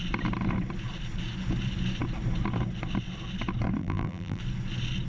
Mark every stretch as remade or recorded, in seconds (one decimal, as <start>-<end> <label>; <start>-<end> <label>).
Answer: 0.0-3.8 recorded; 3.8-4.4 remade; 4.4-5.1 recorded